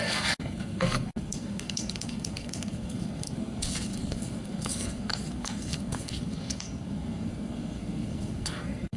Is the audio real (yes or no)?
no